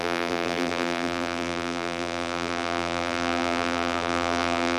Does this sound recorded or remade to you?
remade